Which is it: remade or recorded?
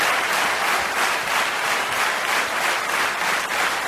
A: recorded